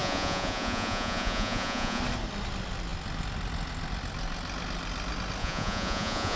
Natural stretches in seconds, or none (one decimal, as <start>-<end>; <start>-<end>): 2.0-5.4